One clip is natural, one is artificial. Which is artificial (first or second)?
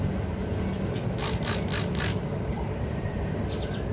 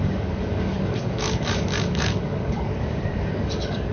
second